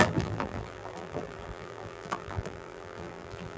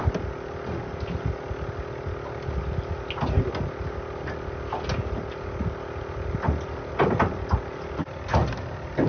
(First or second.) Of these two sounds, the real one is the second